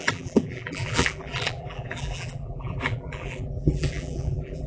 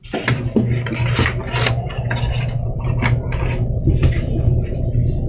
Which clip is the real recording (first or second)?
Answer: second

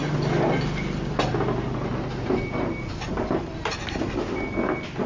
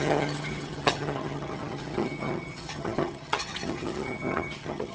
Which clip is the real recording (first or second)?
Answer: first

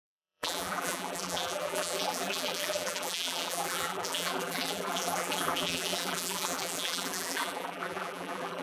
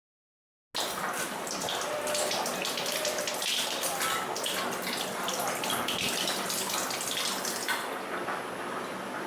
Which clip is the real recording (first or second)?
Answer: second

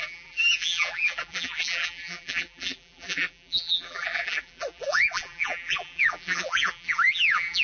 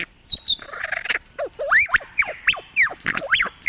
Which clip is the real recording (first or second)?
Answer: second